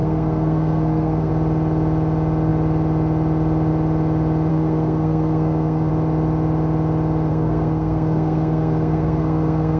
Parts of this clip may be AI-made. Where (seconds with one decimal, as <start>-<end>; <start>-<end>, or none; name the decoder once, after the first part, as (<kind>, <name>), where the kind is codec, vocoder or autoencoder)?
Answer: 0.0-1.3 (codec, SNAC); 4.5-5.9; 7.3-9.8